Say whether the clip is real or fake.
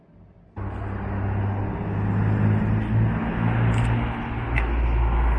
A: real